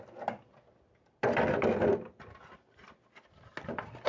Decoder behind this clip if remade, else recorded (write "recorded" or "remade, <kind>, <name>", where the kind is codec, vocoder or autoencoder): recorded